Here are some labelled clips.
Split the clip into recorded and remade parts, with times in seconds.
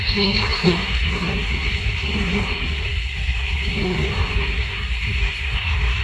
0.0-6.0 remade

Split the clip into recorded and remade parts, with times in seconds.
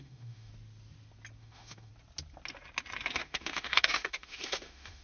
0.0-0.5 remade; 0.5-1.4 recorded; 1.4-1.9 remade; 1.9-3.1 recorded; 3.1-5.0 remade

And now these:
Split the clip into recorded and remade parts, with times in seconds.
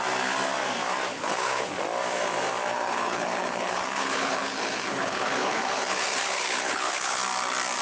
0.0-1.1 recorded; 1.1-1.7 remade; 1.7-2.7 recorded; 2.7-7.2 remade; 7.2-7.8 recorded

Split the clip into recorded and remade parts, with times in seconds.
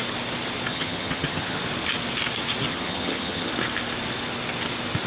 0.0-0.7 recorded; 0.7-1.6 remade; 1.6-2.7 recorded; 2.7-3.5 remade; 3.5-5.1 recorded